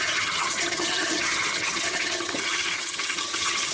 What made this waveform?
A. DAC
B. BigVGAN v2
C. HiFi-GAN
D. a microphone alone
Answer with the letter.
C